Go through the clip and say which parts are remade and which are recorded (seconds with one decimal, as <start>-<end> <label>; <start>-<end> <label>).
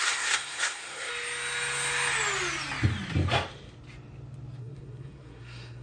0.0-1.1 remade; 1.1-4.6 recorded; 4.6-5.8 remade